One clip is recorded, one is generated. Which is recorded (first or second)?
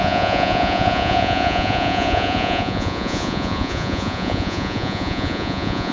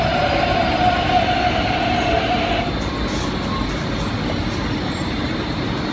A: second